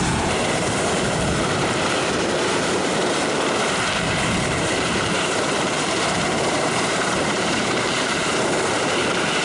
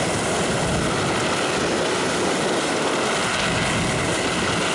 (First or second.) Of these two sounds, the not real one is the first